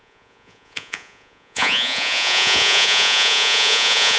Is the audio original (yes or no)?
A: no